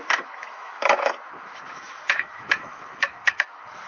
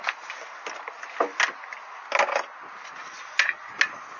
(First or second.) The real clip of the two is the second